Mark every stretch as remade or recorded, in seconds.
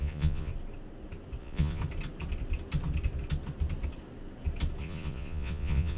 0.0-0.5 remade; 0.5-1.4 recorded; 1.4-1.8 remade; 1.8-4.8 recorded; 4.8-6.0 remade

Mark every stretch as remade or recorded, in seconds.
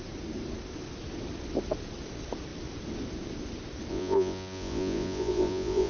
0.0-3.9 recorded; 3.9-5.9 remade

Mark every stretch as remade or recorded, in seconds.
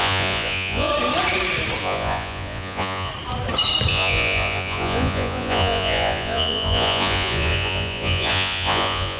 0.0-0.9 remade; 0.9-1.8 recorded; 1.8-3.1 remade; 3.1-3.9 recorded; 3.9-9.2 remade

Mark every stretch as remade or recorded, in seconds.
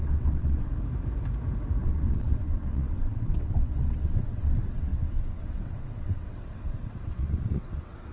0.0-0.7 remade; 0.7-1.8 recorded; 1.8-8.1 remade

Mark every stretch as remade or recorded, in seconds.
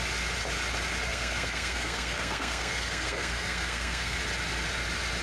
0.0-1.1 recorded; 1.1-4.2 remade; 4.2-5.2 recorded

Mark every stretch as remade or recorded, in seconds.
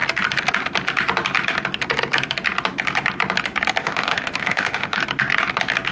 0.0-3.8 recorded; 3.8-5.0 remade; 5.0-5.9 recorded